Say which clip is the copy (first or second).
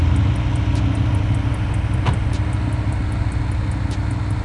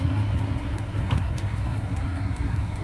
second